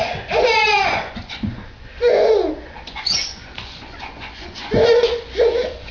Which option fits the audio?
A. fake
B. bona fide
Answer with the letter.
A